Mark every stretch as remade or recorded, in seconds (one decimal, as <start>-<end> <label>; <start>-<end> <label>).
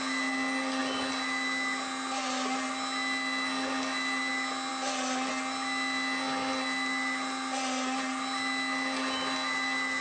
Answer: 0.0-10.0 recorded